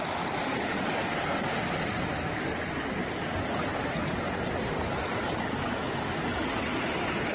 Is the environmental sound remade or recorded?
recorded